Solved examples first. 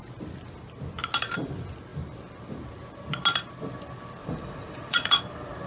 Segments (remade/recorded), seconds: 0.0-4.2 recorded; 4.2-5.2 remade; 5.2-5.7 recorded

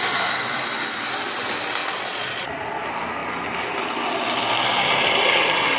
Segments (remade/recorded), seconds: 0.0-1.8 recorded; 1.8-2.5 remade; 2.5-5.8 recorded

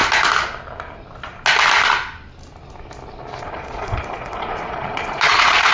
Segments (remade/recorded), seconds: 0.0-3.4 recorded; 3.4-5.7 remade